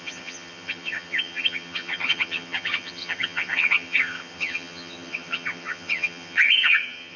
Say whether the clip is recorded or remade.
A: remade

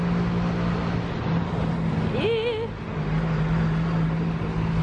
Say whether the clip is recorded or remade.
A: recorded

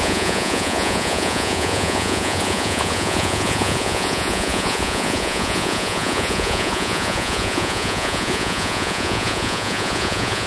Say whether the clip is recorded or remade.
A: remade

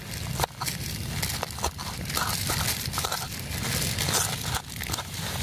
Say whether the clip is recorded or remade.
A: recorded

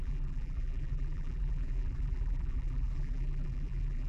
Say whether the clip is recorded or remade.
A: remade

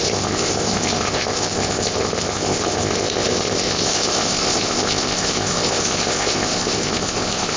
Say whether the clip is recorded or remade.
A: remade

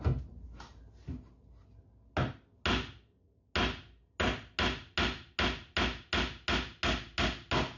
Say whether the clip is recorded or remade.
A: recorded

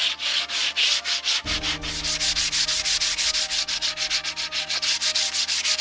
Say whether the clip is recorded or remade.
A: recorded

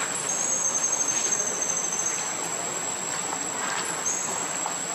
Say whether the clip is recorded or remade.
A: recorded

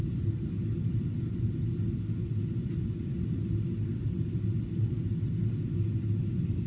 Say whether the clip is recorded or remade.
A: recorded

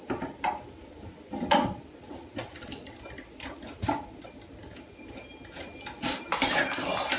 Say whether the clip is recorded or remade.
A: recorded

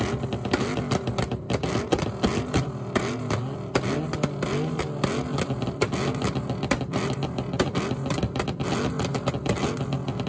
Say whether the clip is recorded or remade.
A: recorded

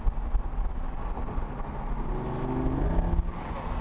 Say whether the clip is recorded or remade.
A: recorded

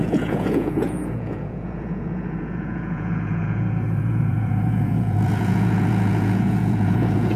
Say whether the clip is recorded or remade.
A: remade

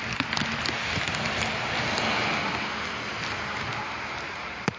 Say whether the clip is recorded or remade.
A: recorded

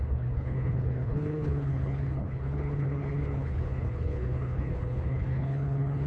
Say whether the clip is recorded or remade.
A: remade